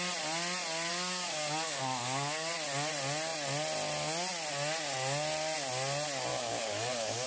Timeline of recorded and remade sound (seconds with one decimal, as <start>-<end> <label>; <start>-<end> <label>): 0.0-0.9 recorded; 0.9-2.5 remade; 2.5-6.3 recorded; 6.3-7.3 remade